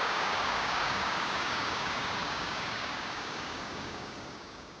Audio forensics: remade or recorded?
remade